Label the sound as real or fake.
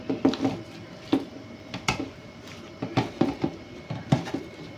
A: real